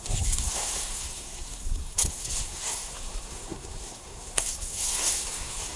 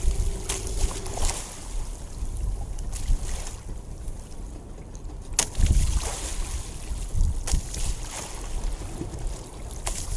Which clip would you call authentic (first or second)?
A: second